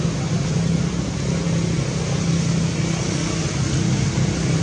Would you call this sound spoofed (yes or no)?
no